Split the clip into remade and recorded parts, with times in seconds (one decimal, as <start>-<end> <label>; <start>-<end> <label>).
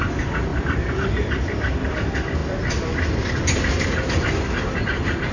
0.0-0.5 recorded; 0.5-1.1 remade; 1.1-5.3 recorded